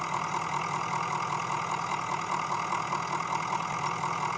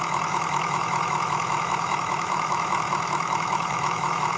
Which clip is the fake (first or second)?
second